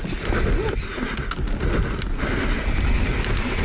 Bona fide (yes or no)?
yes